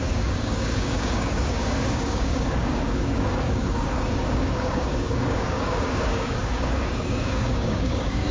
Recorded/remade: remade